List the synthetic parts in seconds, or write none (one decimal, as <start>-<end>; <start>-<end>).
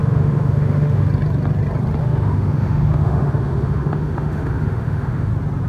0.0-1.1; 2.0-5.3